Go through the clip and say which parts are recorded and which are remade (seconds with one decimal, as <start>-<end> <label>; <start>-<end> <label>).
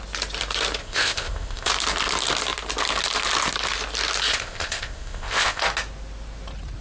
0.0-0.8 recorded; 0.8-1.7 remade; 1.7-4.3 recorded; 4.3-5.6 remade; 5.6-6.8 recorded